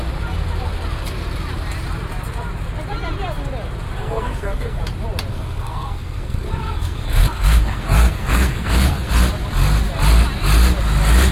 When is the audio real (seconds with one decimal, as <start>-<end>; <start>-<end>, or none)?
0.0-4.0; 4.8-5.3; 9.1-11.3